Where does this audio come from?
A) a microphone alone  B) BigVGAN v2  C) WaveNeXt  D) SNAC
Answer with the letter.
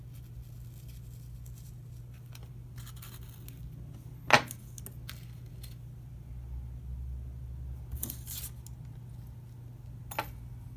A